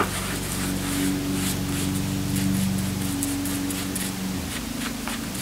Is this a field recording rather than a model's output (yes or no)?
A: yes